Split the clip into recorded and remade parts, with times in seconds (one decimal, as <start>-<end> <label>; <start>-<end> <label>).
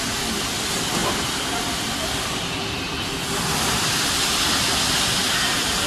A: 0.0-5.2 recorded; 5.2-5.9 remade